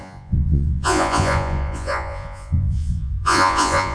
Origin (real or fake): fake